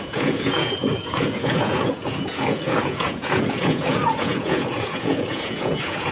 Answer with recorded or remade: remade